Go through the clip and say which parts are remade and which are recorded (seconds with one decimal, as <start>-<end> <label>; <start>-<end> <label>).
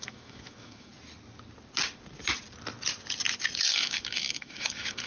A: 0.0-0.9 remade; 0.9-3.7 recorded; 3.7-5.1 remade